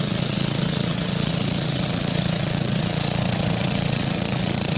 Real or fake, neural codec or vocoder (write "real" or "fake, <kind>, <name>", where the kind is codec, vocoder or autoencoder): fake, vocoder, Vocos